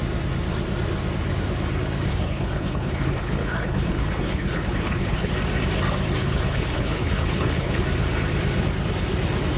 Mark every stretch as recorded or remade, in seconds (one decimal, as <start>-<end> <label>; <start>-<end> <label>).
0.0-2.1 recorded; 2.1-5.3 remade; 5.3-6.2 recorded; 6.2-7.8 remade; 7.8-9.6 recorded